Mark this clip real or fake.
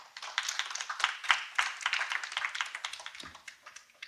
real